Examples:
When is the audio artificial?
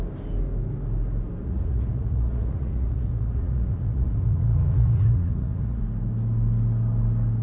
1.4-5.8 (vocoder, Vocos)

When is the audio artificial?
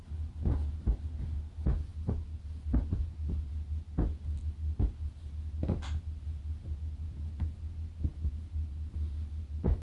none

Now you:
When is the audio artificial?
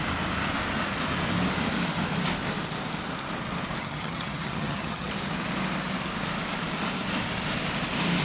3.8-5.1 (vocoder, HiFi-GAN)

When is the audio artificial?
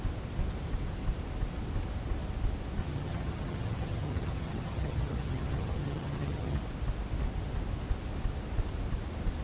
2.8-6.6 (vocoder, HiFi-GAN)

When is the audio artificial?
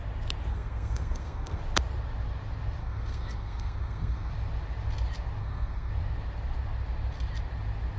0.5-1.6 (codec, SNAC); 2.8-4.3; 5.4-5.9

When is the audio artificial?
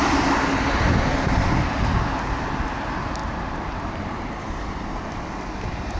3.2-5.1 (vocoder, BigVGAN v2)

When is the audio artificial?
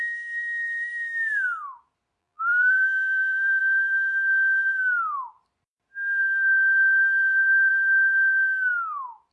2.2-3.6 (vocoder, BigVGAN v2); 7.2-7.7